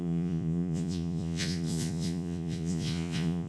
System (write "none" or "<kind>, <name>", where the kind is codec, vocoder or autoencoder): vocoder, Vocos